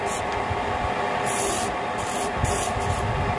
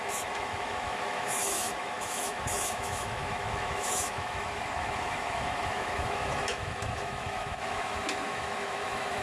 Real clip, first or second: first